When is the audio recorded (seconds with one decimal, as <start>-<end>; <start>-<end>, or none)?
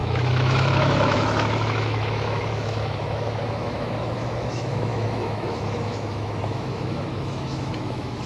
none